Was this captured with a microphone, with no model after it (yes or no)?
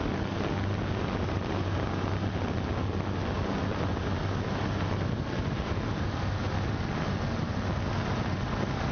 yes